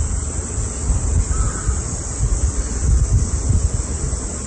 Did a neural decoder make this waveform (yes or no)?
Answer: no